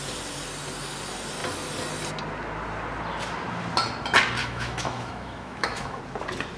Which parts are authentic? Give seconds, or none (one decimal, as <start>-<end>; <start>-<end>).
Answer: 0.0-4.4; 6.0-6.6